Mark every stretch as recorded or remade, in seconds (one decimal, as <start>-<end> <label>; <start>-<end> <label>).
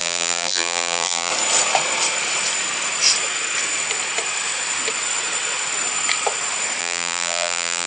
0.0-1.3 remade; 1.3-6.8 recorded; 6.8-7.9 remade